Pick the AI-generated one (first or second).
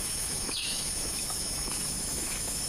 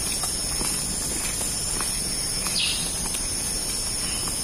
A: first